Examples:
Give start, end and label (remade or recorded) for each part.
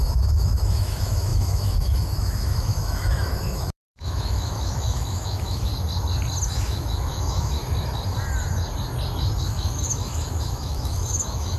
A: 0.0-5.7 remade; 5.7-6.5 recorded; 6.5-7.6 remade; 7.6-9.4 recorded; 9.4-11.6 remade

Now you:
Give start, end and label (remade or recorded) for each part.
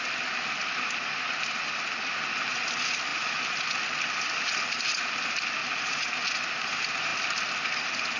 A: 0.0-5.6 recorded; 5.6-6.1 remade; 6.1-8.2 recorded